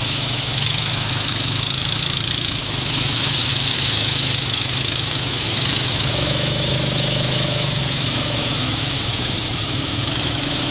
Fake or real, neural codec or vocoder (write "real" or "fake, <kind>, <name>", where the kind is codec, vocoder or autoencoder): fake, autoencoder, DAC-VAE